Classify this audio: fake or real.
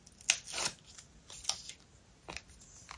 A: real